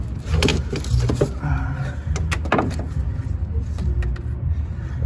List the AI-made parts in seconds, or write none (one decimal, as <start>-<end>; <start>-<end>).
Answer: none